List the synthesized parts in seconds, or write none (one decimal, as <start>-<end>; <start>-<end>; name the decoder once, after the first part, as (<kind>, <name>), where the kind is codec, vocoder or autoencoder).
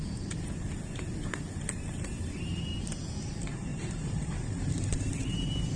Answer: 2.2-2.7 (vocoder, BigVGAN v2); 3.3-5.8